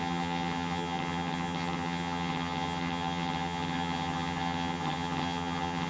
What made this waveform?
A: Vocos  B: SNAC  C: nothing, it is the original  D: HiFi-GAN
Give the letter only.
D